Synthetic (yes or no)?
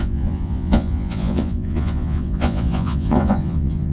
yes